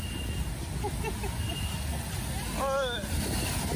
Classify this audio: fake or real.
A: real